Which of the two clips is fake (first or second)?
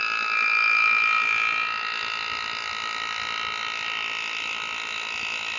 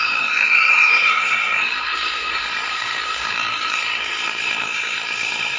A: second